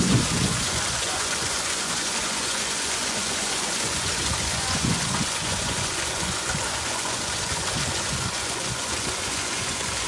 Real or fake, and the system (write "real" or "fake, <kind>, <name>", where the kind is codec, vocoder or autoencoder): fake, vocoder, Vocos